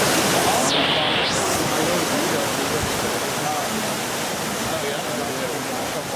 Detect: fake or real real